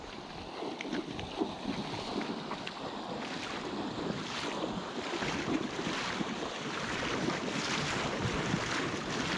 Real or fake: real